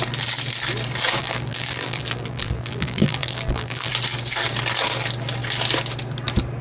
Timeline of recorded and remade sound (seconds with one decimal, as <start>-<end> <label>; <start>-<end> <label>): 0.0-1.2 recorded; 1.2-3.9 remade; 3.9-6.6 recorded